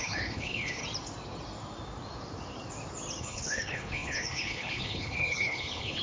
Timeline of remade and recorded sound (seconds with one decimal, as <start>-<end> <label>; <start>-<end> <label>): 0.0-0.8 remade; 0.8-3.2 recorded; 3.2-6.0 remade